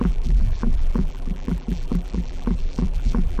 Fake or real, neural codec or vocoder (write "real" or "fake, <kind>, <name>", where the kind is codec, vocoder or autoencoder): fake, vocoder, BigVGAN v2